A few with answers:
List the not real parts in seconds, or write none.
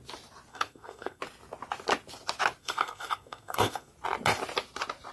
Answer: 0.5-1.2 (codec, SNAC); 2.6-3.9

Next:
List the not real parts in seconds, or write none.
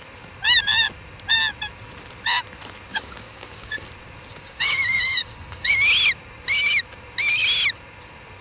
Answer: 2.9-3.9 (codec, DAC); 4.3-5.7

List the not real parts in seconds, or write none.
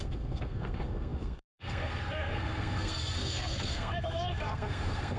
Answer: 0.0-5.2 (codec, SNAC)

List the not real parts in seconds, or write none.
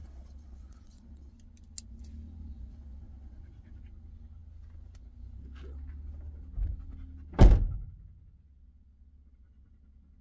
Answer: 0.0-1.3 (vocoder, WaveNeXt); 2.7-3.8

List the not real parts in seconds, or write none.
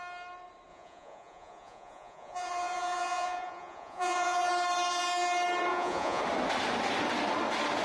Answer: 0.7-4.5 (vocoder, Vocos); 5.7-6.2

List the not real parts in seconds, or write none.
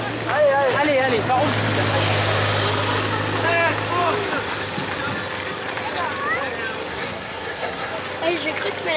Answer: 6.9-7.9 (codec, SNAC)